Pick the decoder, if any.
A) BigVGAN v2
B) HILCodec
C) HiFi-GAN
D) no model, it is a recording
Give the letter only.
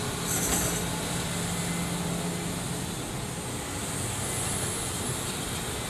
D